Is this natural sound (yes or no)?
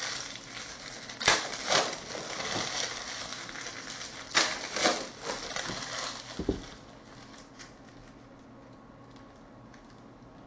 yes